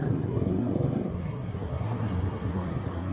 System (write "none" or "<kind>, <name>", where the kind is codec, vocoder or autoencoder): codec, SNAC